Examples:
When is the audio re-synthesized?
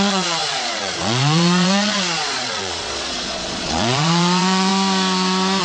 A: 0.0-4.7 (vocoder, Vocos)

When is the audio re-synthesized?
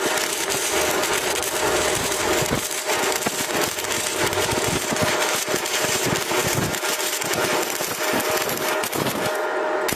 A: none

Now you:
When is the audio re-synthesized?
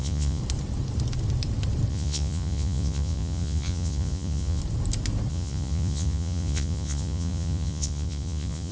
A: 0.0-0.4 (vocoder, Vocos); 1.9-4.6; 5.3-8.7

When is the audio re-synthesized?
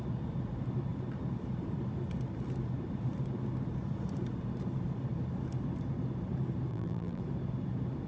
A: 6.7-7.2 (vocoder, BigVGAN v2)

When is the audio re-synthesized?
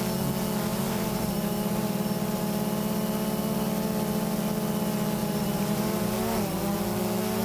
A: 0.7-2.4 (vocoder, BigVGAN v2); 5.2-6.4